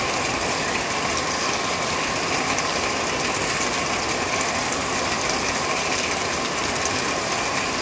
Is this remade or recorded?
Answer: recorded